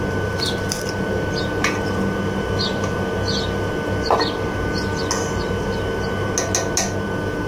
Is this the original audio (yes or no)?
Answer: yes